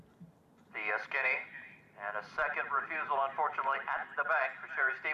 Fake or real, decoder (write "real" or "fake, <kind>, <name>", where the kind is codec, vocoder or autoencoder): fake, vocoder, BigVGAN v2